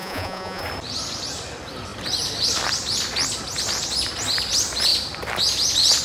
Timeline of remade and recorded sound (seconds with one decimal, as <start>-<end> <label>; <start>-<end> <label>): 0.0-0.6 remade; 0.6-6.0 recorded